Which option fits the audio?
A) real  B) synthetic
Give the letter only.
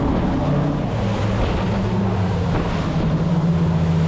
A